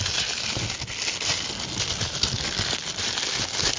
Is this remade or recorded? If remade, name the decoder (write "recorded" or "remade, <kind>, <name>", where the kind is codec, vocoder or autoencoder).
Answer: recorded